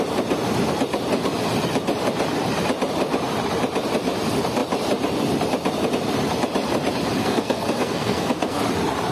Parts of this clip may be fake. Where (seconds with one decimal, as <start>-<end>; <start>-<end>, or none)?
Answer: 7.2-8.6